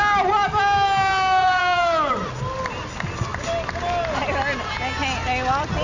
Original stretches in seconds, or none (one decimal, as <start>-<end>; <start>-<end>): 0.0-1.4; 2.3-5.8